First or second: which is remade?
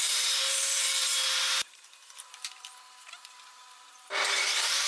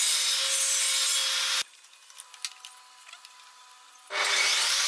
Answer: first